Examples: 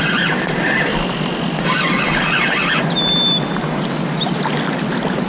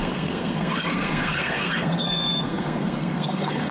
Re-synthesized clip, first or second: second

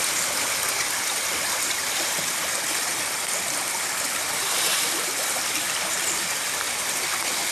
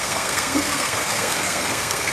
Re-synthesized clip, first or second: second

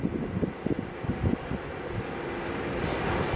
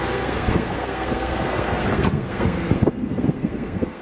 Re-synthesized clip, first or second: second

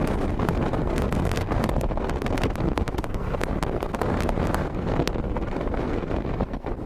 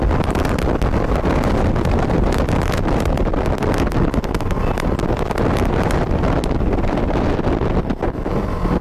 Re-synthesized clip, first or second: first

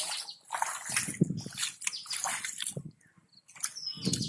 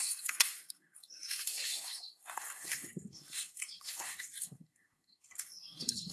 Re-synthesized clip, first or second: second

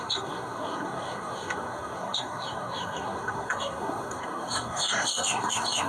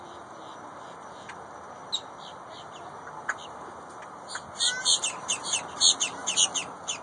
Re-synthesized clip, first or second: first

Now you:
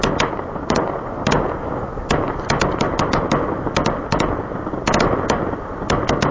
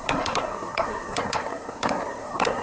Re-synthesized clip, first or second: second